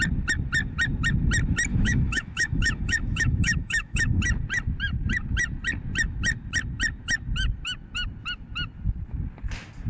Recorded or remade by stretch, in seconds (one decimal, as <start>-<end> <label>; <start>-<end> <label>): 0.0-1.7 recorded; 1.7-4.2 remade; 4.2-9.9 recorded